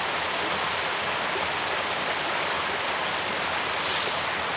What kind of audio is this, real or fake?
real